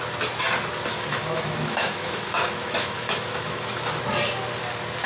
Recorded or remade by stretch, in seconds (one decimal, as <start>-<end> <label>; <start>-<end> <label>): 0.0-0.9 recorded; 0.9-4.0 remade; 4.0-5.1 recorded